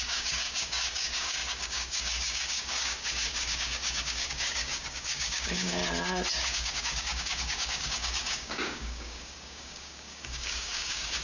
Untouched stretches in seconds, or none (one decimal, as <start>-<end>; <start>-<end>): 5.8-6.3